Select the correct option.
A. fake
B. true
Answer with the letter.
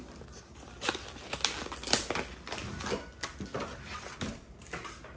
B